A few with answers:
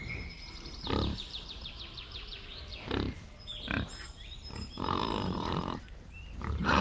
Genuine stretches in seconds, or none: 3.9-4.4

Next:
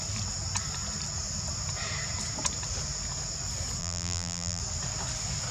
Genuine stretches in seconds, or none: 0.0-3.8; 4.6-5.5

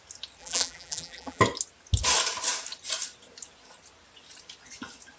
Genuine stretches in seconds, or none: 0.0-0.4; 1.4-5.2

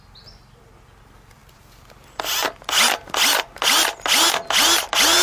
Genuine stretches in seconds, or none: 0.0-5.2

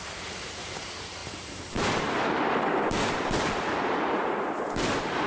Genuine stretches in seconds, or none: none

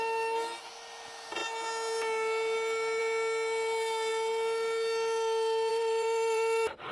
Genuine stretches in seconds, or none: 0.0-5.7